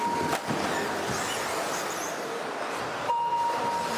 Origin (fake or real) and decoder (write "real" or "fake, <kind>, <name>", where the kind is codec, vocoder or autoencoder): real